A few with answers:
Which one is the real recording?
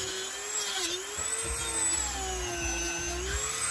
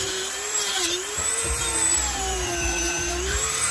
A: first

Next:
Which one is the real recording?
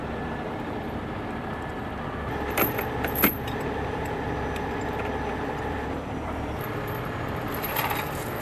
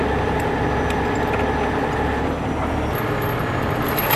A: second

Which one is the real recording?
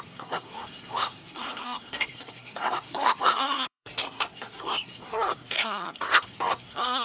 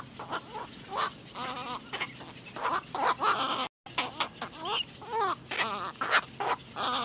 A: second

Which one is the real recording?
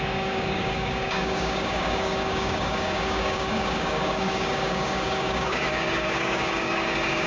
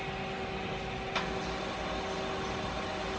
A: second